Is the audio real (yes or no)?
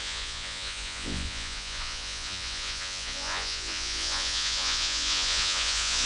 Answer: no